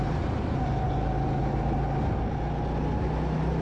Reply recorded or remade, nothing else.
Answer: recorded